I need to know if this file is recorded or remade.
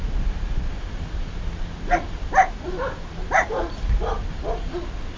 recorded